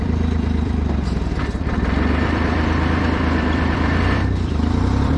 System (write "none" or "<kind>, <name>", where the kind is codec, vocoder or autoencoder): vocoder, BigVGAN v2